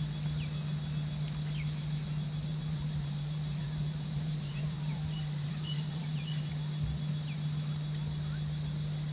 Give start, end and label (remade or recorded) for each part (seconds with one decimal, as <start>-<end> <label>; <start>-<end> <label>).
0.0-2.5 recorded; 2.5-6.3 remade; 6.3-9.1 recorded